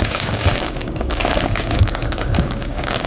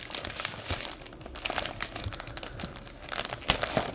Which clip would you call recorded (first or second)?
second